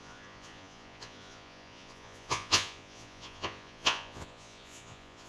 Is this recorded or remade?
remade